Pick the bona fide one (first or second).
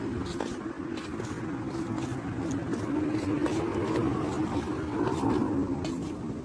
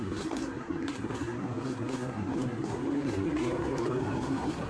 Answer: first